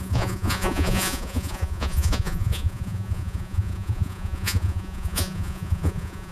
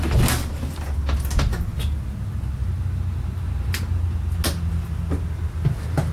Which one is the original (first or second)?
second